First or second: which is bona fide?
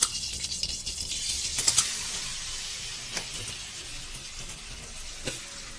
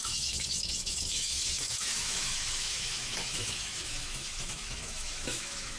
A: first